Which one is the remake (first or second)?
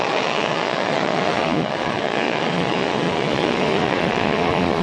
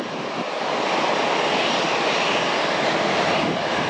first